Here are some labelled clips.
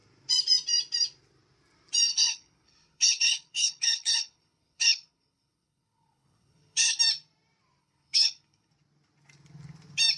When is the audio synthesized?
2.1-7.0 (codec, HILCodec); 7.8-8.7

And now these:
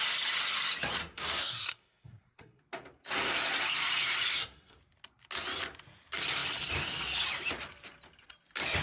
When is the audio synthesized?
1.0-2.6 (codec, SNAC); 4.3-4.8

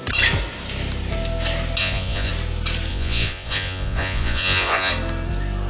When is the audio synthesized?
1.8-2.3 (vocoder, Vocos); 2.9-4.9

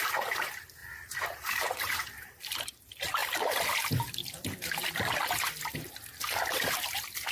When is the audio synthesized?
0.0-3.2 (vocoder, BigVGAN v2)

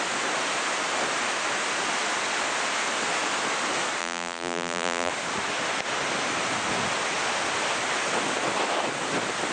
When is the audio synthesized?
4.0-5.1 (vocoder, BigVGAN v2)

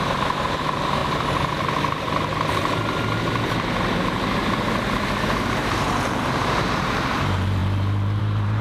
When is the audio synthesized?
0.0-1.0 (vocoder, BigVGAN v2); 5.5-7.6; 8.2-8.6